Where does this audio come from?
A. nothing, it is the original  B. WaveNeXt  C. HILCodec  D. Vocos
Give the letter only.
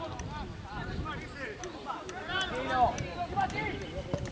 A